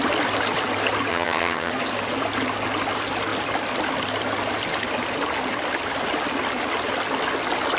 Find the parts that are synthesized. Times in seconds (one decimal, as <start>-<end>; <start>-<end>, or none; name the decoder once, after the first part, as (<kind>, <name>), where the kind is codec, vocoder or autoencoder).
1.1-1.7 (vocoder, HiFi-GAN)